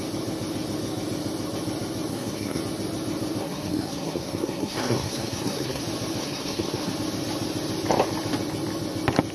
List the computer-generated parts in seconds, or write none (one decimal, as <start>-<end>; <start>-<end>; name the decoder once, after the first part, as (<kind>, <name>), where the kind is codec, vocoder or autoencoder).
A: 2.1-2.6 (codec, SNAC); 3.4-5.8; 6.2-6.9